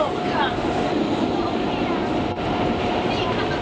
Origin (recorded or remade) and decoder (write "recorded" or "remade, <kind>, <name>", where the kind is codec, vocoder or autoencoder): recorded